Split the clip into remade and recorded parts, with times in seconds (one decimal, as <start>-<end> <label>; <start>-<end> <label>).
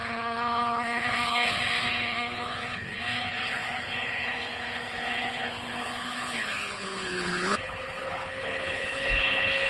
0.0-9.7 remade